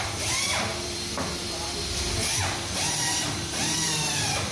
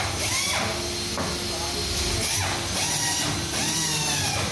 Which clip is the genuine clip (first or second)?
second